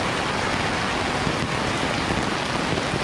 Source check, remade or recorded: recorded